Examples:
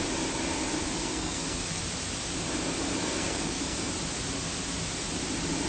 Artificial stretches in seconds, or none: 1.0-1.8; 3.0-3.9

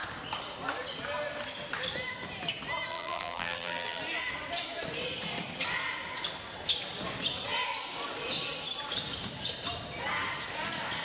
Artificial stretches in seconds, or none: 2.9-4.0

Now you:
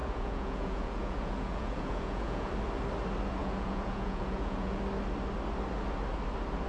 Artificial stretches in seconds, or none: 0.0-2.5; 3.4-4.8

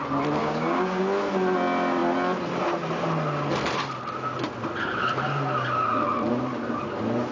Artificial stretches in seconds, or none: 0.4-1.0